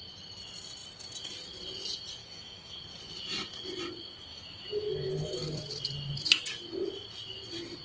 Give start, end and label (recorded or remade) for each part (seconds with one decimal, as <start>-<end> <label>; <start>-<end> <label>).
0.0-2.2 recorded; 2.2-2.8 remade; 2.8-4.3 recorded; 4.3-4.9 remade; 4.9-7.8 recorded